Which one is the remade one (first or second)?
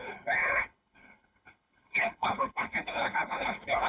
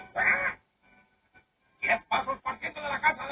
first